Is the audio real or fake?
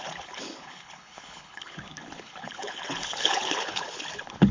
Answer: fake